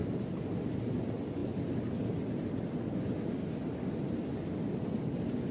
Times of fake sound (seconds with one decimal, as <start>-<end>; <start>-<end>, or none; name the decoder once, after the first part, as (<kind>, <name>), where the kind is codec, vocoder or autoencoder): 0.0-0.8 (vocoder, BigVGAN v2)